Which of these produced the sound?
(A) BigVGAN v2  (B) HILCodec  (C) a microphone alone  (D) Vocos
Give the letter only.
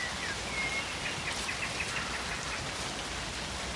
C